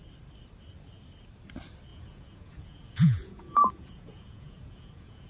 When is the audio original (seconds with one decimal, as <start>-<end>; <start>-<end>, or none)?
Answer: 0.0-1.9